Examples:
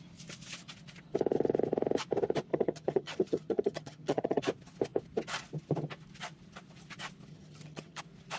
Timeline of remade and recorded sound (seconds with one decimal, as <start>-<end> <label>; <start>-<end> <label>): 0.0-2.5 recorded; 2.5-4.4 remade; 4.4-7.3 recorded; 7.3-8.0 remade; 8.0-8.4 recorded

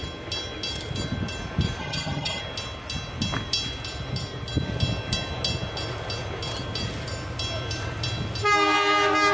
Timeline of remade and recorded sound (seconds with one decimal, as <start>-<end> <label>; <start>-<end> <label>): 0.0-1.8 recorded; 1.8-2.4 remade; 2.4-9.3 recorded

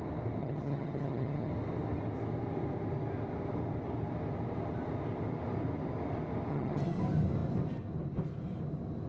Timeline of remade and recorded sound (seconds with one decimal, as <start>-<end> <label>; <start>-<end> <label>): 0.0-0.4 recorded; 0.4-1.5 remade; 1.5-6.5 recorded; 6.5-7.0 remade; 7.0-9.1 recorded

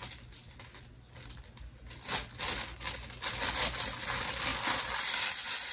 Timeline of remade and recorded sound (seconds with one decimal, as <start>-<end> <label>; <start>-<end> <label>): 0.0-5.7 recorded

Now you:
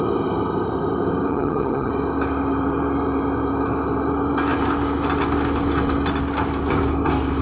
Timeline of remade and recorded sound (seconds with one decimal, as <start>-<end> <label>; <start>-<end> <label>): 0.0-1.3 recorded; 1.3-1.9 remade; 1.9-7.4 recorded

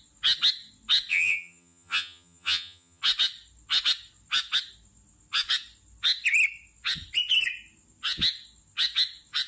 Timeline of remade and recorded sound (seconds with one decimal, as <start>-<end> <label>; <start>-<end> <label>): 0.0-1.1 recorded; 1.1-3.0 remade; 3.0-9.5 recorded

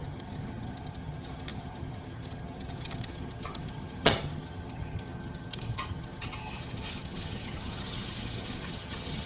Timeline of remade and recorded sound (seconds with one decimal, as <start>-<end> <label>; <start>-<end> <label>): 0.0-9.3 remade

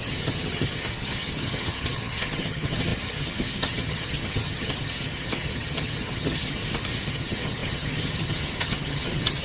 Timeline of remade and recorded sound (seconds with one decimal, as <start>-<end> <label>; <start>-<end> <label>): 0.0-6.6 remade; 6.6-7.1 recorded; 7.1-9.4 remade